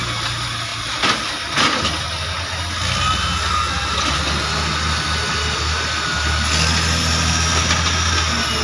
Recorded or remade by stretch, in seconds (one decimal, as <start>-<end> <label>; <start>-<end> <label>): 0.0-8.6 recorded